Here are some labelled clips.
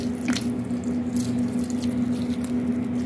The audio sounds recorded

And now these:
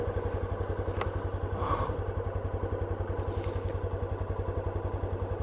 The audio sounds recorded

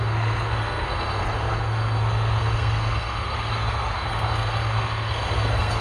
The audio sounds remade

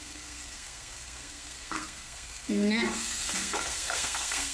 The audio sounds remade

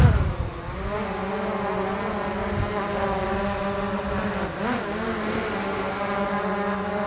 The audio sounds recorded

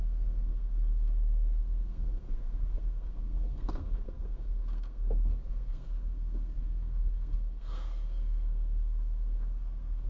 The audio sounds remade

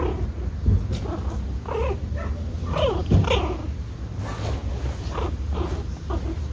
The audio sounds recorded